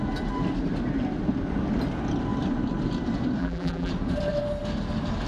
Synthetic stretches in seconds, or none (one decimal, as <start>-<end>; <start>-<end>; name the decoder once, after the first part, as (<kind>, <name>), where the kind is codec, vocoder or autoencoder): 3.4-3.9 (vocoder, BigVGAN v2)